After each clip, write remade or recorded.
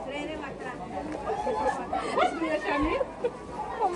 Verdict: recorded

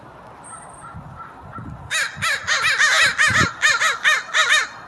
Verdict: recorded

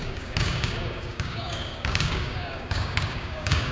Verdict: remade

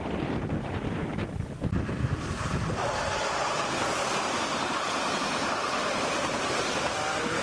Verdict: remade